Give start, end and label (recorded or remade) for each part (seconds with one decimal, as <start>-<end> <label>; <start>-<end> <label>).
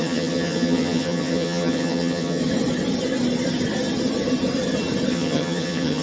0.0-2.4 remade; 2.4-5.1 recorded; 5.1-6.0 remade